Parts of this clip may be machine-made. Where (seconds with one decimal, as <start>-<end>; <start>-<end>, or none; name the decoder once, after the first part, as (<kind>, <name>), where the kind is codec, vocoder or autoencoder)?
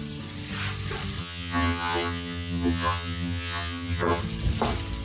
1.2-4.2 (vocoder, HiFi-GAN)